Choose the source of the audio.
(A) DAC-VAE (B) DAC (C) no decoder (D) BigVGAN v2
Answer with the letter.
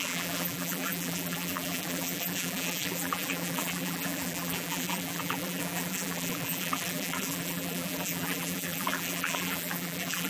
D